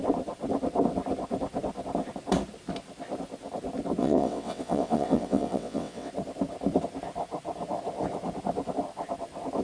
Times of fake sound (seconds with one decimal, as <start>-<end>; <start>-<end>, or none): 4.0-6.1